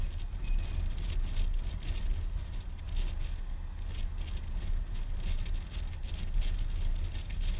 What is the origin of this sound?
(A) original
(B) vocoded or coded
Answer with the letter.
A